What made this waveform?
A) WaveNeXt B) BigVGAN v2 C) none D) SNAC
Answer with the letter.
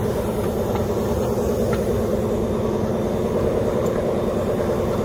B